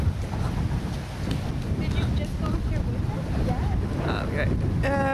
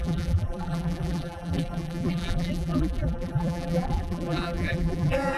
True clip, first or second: first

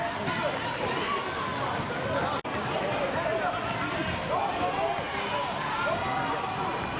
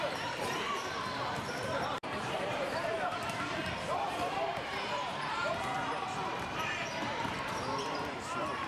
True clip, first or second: first